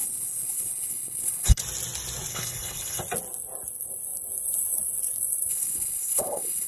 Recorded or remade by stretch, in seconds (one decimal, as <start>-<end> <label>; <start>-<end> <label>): 0.0-1.6 remade; 1.6-2.3 recorded; 2.3-3.0 remade; 3.0-5.5 recorded; 5.5-6.7 remade